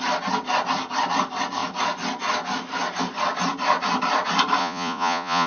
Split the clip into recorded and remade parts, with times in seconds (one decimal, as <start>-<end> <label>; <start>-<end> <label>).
0.0-4.6 recorded; 4.6-5.5 remade